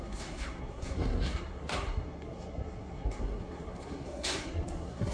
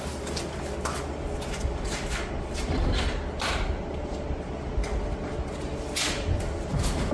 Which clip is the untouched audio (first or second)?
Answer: second